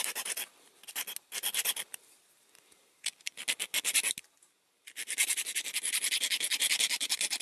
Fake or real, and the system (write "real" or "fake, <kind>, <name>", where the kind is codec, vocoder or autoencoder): real